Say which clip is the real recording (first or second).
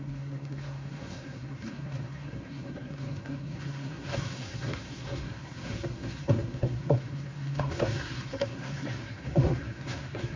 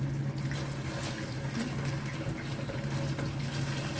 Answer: second